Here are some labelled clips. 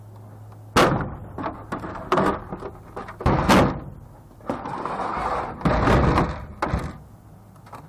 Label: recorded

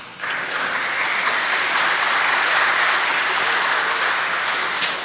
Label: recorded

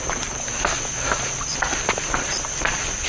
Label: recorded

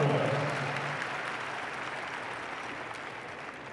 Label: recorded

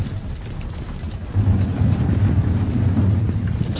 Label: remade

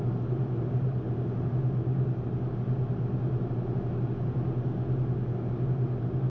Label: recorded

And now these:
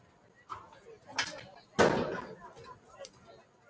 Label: recorded